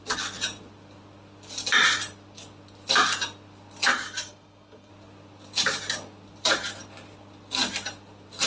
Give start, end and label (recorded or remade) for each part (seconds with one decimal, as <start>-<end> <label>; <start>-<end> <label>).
0.0-3.9 recorded; 3.9-4.9 remade; 4.9-8.5 recorded